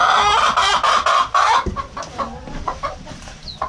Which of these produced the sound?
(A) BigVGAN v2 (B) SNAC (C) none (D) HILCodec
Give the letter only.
C